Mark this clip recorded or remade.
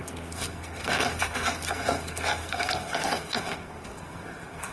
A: remade